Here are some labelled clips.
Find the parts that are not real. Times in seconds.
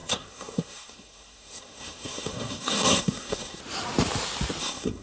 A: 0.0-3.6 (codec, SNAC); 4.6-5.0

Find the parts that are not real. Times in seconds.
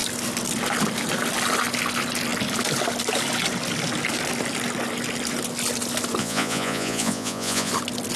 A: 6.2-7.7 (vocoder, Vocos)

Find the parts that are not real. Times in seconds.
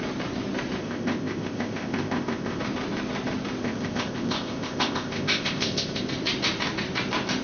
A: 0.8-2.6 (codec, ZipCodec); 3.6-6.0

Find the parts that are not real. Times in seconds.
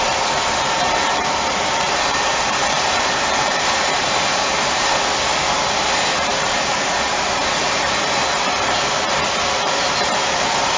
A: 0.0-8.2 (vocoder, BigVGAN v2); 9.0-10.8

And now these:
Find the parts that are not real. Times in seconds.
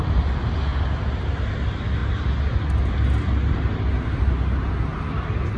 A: none